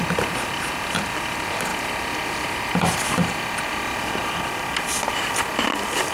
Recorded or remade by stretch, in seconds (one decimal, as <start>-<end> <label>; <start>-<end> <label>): 0.0-6.1 recorded